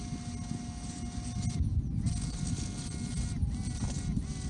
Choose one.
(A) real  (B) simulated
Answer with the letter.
A